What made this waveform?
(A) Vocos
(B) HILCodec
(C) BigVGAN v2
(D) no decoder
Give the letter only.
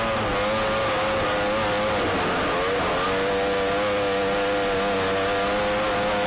D